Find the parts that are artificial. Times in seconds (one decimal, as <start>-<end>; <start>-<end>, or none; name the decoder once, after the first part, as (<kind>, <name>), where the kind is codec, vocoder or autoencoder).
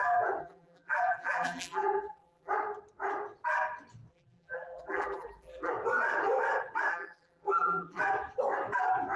0.4-2.5 (vocoder, BigVGAN v2); 4.1-5.7; 6.9-8.0